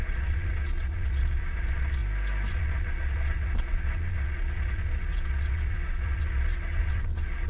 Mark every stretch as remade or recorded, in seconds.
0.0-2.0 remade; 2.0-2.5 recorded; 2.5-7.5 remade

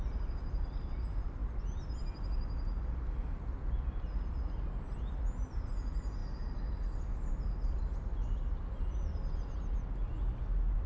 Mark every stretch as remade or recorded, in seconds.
0.0-10.9 recorded